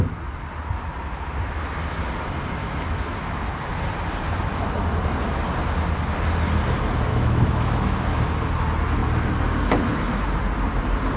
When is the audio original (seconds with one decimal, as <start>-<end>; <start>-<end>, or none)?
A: 0.0-2.6; 3.7-7.1; 8.3-11.2